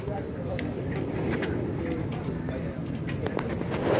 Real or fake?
real